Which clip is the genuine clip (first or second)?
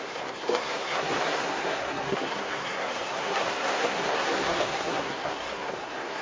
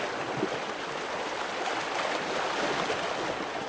second